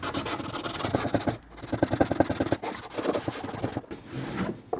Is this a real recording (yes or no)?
yes